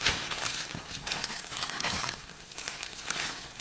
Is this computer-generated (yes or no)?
yes